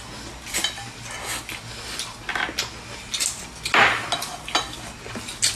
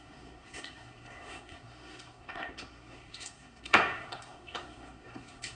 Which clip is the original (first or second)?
first